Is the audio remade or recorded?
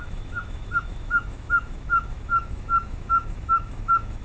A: remade